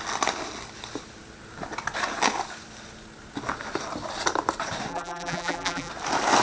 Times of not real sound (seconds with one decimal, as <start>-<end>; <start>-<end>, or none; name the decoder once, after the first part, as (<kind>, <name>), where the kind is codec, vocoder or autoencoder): 4.9-5.9 (vocoder, BigVGAN v2)